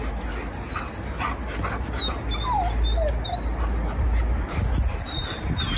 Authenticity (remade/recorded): recorded